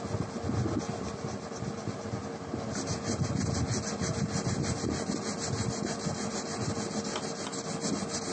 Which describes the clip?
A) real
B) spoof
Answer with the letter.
A